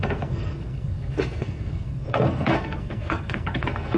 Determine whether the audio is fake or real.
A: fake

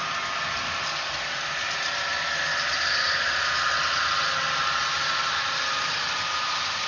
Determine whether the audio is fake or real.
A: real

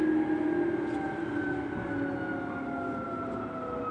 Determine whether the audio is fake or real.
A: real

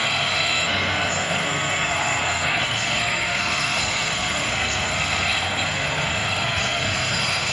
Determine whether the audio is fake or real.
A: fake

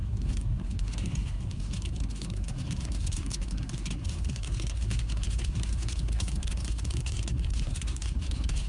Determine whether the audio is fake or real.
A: fake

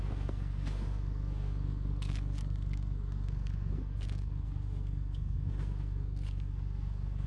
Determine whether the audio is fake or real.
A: fake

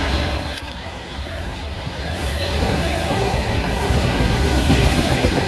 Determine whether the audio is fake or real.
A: fake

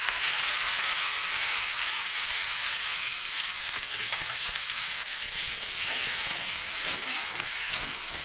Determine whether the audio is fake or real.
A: fake